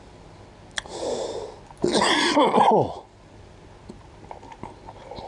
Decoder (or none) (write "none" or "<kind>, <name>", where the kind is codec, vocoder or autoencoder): none